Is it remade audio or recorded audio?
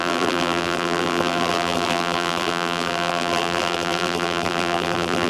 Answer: remade